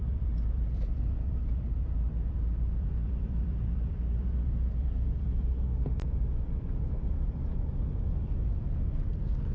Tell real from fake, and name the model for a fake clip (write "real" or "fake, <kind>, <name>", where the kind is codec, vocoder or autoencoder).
fake, vocoder, BigVGAN v2